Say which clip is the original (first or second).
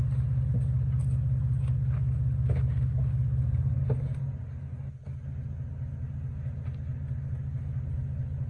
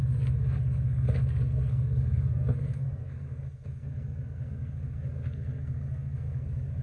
first